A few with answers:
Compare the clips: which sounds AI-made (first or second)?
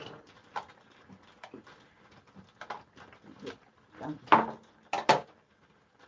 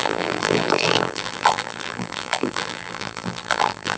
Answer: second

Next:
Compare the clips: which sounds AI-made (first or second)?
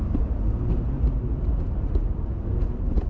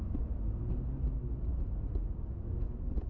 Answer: first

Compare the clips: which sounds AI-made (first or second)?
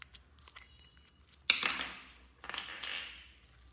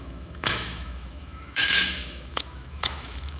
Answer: second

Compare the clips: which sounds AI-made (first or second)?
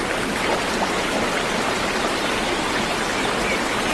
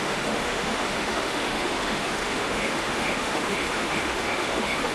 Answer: second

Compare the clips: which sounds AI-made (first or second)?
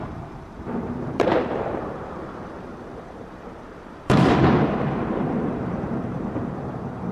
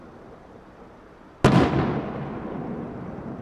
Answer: first